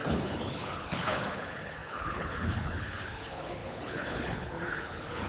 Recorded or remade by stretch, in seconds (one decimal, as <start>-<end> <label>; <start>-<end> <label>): 0.0-5.3 remade